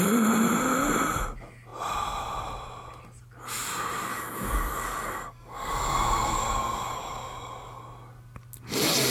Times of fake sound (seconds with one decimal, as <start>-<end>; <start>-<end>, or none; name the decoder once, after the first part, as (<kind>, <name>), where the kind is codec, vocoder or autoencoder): 4.1-7.8 (codec, DAC)